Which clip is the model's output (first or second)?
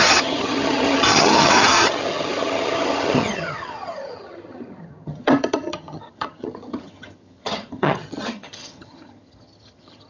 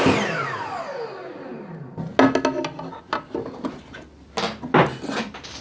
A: first